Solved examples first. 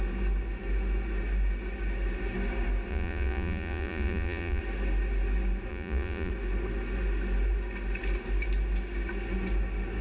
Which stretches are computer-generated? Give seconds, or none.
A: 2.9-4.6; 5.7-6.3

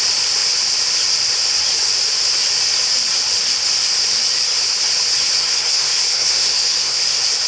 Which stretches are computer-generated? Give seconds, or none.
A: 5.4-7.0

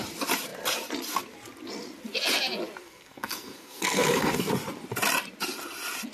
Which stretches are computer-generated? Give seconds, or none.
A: 2.8-4.5

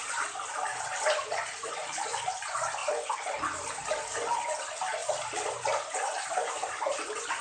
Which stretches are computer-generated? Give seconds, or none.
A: 0.0-0.5; 5.0-5.6

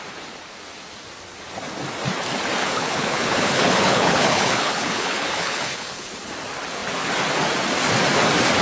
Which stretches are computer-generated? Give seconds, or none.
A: 2.6-6.3